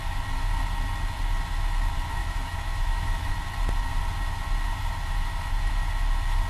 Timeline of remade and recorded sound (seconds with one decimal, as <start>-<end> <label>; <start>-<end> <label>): 0.0-2.2 recorded; 2.2-3.3 remade; 3.3-6.5 recorded